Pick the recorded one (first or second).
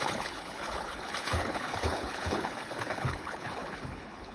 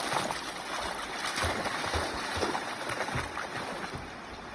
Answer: second